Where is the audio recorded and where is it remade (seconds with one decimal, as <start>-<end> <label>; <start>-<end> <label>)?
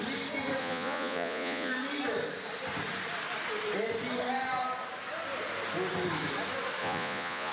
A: 0.0-0.6 recorded; 0.6-1.7 remade; 1.7-6.8 recorded; 6.8-7.5 remade